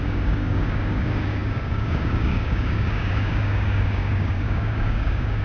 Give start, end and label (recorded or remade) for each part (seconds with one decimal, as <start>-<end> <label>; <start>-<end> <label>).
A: 0.0-5.4 remade